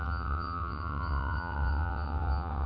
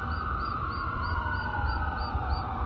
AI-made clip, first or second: first